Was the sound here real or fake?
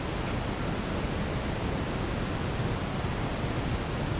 real